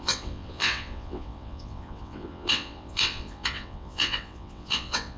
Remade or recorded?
remade